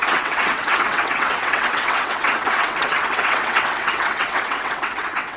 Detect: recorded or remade remade